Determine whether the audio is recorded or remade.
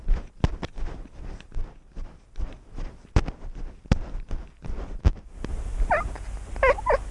recorded